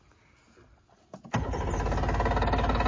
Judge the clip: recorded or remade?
recorded